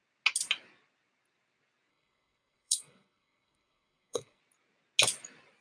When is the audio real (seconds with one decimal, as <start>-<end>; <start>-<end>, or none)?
0.0-1.9; 4.4-5.6